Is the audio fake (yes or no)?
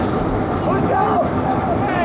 no